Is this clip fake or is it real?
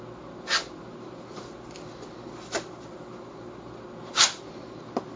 real